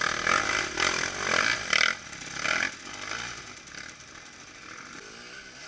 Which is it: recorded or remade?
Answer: recorded